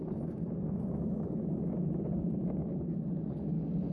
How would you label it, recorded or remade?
recorded